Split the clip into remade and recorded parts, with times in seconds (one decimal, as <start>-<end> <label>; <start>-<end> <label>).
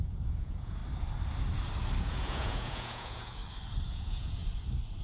0.0-0.8 remade; 0.8-2.1 recorded; 2.1-3.4 remade; 3.4-3.9 recorded; 3.9-4.4 remade; 4.4-5.0 recorded